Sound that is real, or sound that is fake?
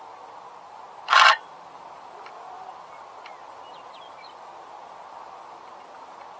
real